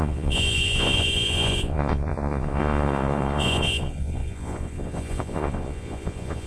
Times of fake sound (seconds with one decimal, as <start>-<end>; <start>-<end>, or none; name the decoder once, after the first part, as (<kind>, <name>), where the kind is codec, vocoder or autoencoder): 0.0-6.5 (vocoder, Vocos)